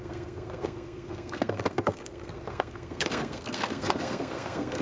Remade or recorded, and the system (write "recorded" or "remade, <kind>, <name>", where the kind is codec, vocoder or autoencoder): remade, codec, SNAC